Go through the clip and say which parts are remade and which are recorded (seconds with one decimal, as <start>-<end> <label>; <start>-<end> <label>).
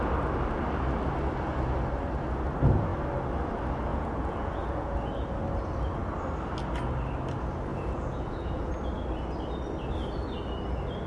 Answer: 0.0-3.9 recorded; 3.9-5.1 remade; 5.1-7.7 recorded; 7.7-8.7 remade; 8.7-11.1 recorded